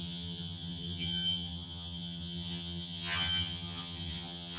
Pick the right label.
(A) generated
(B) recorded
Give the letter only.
A